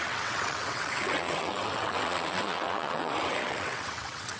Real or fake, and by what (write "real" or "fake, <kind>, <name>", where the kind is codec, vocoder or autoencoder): fake, vocoder, WaveNeXt